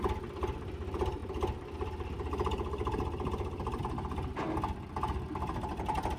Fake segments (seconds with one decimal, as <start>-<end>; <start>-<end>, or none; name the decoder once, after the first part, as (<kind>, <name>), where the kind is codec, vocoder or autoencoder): none